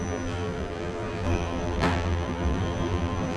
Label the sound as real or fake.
fake